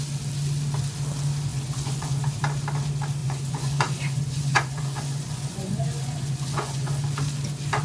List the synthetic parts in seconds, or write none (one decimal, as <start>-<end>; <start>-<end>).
1.5-2.2; 3.2-7.0